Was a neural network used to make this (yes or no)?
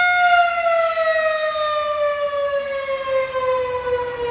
no